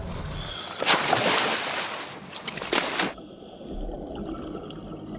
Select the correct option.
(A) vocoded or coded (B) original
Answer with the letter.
B